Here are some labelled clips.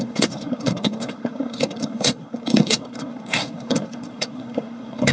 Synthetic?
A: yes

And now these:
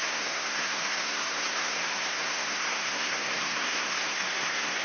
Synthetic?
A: yes